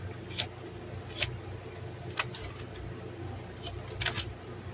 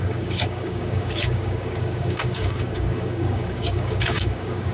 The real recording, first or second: first